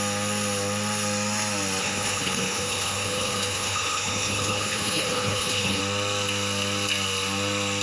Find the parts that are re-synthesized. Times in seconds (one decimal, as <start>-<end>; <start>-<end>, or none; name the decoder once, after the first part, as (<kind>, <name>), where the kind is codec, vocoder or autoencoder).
1.8-5.8 (codec, HILCodec)